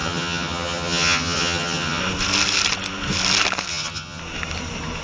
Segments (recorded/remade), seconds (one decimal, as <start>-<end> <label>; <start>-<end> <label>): 0.0-2.0 remade; 2.0-3.7 recorded; 3.7-4.2 remade; 4.2-5.0 recorded